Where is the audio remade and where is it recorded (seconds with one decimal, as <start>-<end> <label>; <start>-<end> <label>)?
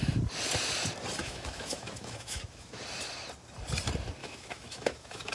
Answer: 0.0-1.2 recorded; 1.2-2.8 remade; 2.8-4.2 recorded; 4.2-5.3 remade